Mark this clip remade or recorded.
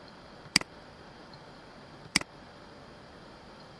remade